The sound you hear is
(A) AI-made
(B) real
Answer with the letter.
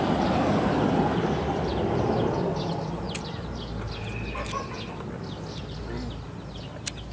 B